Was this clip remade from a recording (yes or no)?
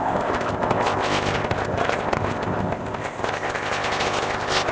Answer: yes